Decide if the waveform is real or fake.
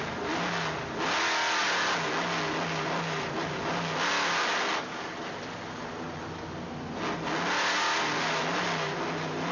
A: real